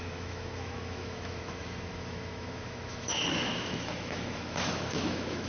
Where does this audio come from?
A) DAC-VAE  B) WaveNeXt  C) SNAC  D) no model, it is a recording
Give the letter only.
A